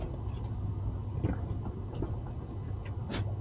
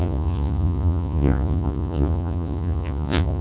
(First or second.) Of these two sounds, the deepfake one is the second